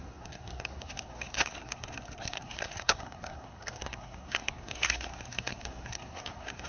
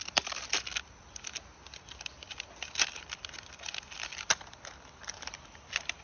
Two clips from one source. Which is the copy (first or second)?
first